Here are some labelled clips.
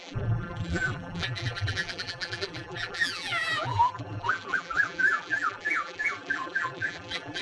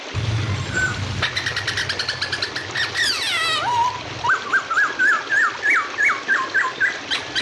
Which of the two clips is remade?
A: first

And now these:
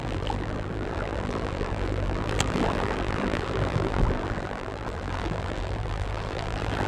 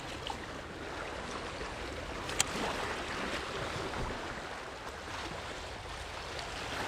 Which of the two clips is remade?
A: first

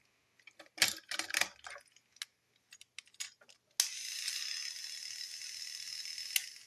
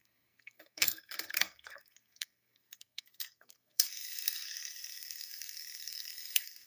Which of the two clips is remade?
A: second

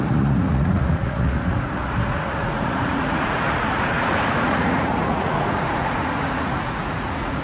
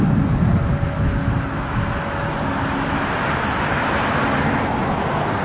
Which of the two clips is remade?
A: first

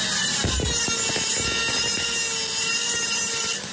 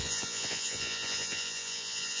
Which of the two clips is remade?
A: second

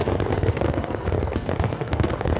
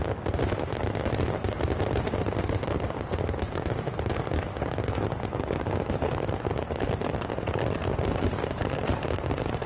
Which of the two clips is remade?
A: first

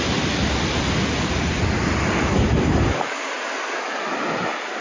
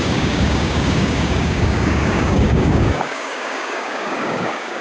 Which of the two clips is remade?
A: second